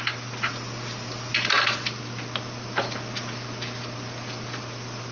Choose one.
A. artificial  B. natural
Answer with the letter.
B